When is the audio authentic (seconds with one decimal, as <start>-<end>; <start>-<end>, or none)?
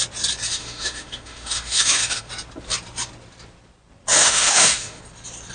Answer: 0.0-0.5; 2.3-4.2; 5.0-5.5